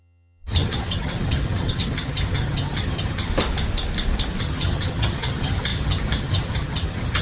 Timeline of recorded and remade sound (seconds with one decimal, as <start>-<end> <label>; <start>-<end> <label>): 0.0-3.3 remade; 3.3-4.4 recorded; 4.4-7.2 remade

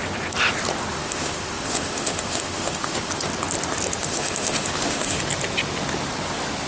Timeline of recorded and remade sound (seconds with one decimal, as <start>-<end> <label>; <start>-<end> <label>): 0.0-0.9 recorded; 0.9-3.1 remade; 3.1-4.0 recorded; 4.0-5.2 remade; 5.2-6.7 recorded

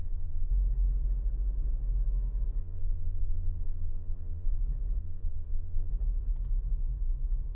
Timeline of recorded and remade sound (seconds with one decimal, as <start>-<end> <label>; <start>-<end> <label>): 0.0-0.5 remade; 0.5-2.6 recorded; 2.6-4.6 remade; 4.6-5.0 recorded; 5.0-5.9 remade; 5.9-7.5 recorded

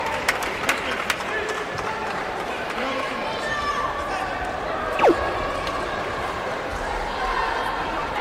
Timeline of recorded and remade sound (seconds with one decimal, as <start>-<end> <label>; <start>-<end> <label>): 0.0-2.0 recorded; 2.0-4.4 remade; 4.4-8.2 recorded

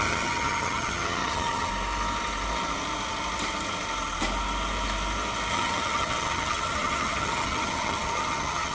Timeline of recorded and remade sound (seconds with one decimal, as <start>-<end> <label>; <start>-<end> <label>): 0.0-1.7 remade; 1.7-5.5 recorded; 5.5-8.7 remade

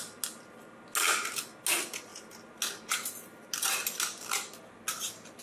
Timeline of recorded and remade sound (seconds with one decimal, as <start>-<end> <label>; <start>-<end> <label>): 0.0-5.4 recorded

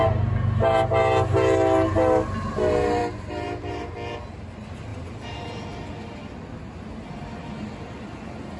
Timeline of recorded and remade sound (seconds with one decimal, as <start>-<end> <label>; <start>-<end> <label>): 0.0-3.0 recorded; 3.0-3.8 remade; 3.8-4.9 recorded; 4.9-5.6 remade; 5.6-8.6 recorded

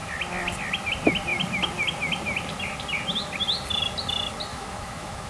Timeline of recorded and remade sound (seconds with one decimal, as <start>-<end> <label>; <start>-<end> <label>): 0.0-4.5 recorded; 4.5-5.3 remade